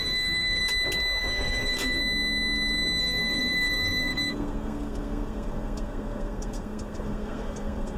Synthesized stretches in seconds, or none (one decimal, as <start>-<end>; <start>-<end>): 0.0-0.6; 1.2-2.0; 3.0-8.0